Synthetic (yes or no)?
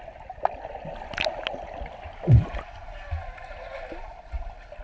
no